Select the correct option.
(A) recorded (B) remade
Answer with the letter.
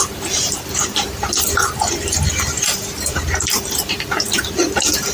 B